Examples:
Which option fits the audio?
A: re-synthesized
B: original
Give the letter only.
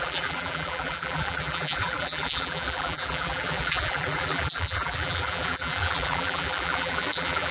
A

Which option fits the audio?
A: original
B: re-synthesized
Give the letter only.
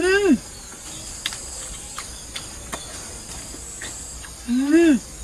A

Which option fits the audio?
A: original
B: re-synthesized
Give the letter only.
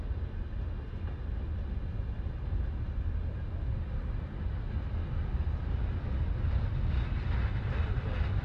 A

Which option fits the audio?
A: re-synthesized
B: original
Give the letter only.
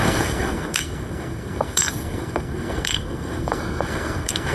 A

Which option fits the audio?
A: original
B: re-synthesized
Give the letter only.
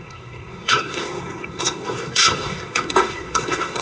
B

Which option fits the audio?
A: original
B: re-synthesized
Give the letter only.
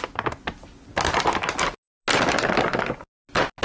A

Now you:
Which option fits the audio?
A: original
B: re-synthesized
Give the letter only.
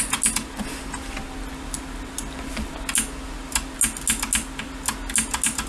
A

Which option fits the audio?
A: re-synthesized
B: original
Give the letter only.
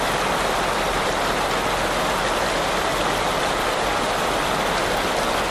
B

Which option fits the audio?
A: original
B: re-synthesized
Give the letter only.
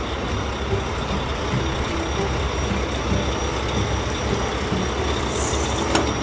A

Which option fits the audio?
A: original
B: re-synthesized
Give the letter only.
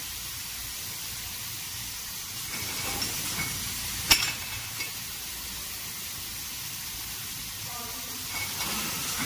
A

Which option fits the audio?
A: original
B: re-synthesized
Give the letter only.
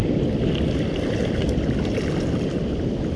A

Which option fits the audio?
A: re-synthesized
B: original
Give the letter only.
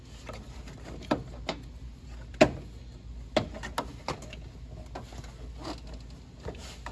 B